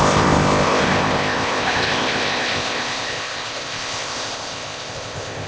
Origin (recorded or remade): remade